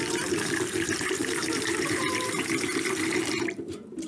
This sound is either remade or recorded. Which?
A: remade